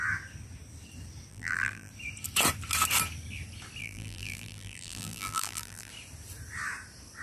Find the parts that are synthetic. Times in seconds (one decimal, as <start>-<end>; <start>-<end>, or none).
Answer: 1.3-1.9; 3.8-5.9